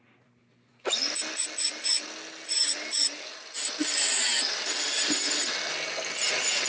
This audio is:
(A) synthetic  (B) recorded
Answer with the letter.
B